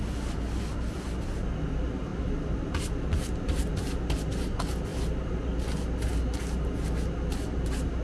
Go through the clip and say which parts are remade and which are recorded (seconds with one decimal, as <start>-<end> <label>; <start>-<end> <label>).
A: 0.0-8.0 recorded